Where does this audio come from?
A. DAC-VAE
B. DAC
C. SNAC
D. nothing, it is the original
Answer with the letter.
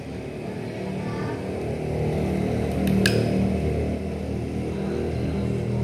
D